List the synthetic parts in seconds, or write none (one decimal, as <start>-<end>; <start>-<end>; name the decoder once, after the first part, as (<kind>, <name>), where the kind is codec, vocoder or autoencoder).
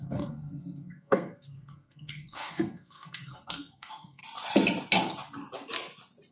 0.0-4.2 (codec, SNAC)